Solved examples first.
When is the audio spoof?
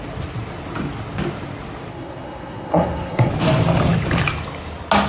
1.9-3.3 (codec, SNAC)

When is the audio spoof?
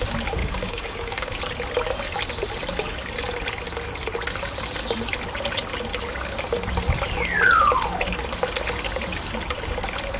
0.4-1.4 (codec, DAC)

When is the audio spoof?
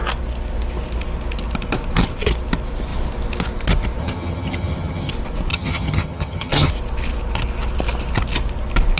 4.0-5.1 (vocoder, HiFi-GAN); 5.5-6.7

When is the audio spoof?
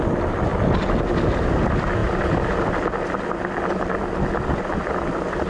none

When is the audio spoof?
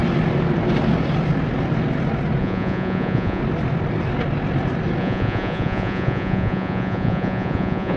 2.4-3.4 (vocoder, Vocos); 5.0-8.0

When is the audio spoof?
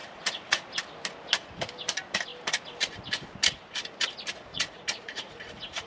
0.0-0.7 (vocoder, Vocos); 4.5-5.9